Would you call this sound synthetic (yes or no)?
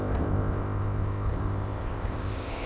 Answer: yes